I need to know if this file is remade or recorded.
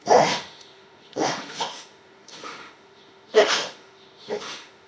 remade